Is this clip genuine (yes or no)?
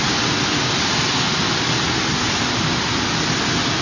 yes